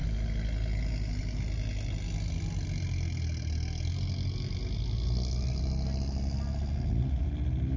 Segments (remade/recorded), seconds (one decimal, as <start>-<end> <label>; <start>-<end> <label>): 0.0-7.8 recorded